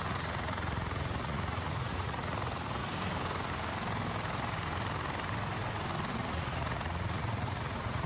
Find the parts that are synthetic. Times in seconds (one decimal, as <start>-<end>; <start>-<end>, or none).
0.0-2.8; 6.1-8.1